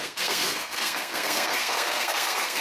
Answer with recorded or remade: remade